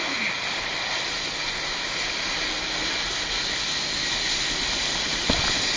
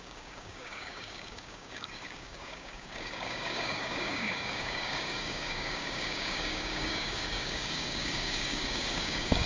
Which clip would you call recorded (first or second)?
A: first